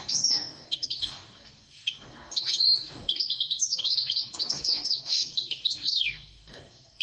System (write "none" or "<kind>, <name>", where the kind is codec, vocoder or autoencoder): codec, DAC